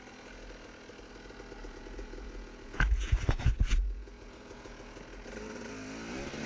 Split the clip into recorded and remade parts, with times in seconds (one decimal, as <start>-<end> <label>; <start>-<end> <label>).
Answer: 0.0-1.6 recorded; 1.6-5.0 remade; 5.0-6.5 recorded